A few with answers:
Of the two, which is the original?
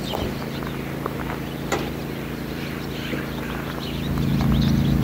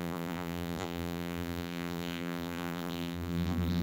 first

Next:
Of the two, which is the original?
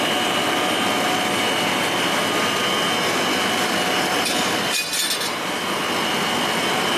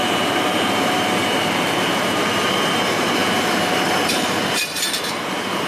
first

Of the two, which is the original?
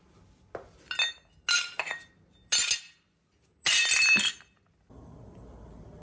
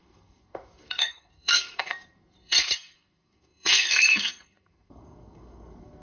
first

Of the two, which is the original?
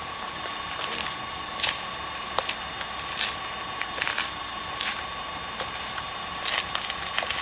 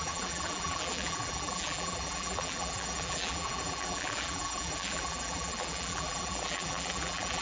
first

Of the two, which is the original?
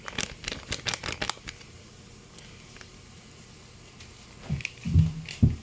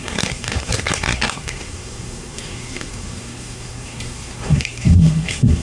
first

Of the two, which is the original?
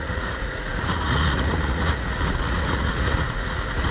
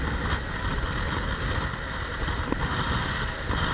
second